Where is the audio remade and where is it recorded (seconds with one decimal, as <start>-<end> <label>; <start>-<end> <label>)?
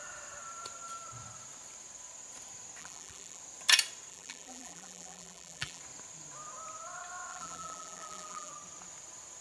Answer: 0.0-2.8 recorded; 2.8-3.4 remade; 3.4-4.1 recorded; 4.1-5.8 remade; 5.8-7.3 recorded; 7.3-8.5 remade; 8.5-9.4 recorded